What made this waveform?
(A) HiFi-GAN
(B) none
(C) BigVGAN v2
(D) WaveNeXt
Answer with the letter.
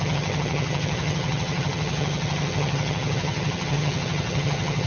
A